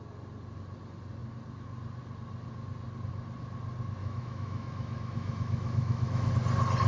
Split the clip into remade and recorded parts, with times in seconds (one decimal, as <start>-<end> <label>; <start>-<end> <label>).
0.0-4.0 recorded; 4.0-6.3 remade; 6.3-6.9 recorded